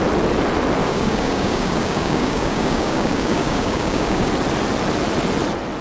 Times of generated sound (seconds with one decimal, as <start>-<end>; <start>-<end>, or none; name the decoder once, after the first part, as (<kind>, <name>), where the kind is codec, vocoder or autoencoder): 0.8-4.3 (codec, DAC)